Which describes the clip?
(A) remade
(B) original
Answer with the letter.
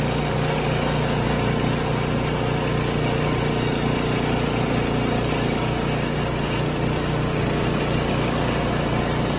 B